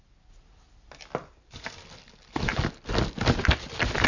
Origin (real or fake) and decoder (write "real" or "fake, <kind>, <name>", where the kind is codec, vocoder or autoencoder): real